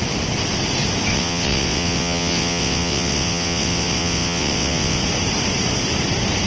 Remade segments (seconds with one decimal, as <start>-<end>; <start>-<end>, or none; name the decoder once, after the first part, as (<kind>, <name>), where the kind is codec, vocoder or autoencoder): 1.1-5.0 (vocoder, WaveNeXt)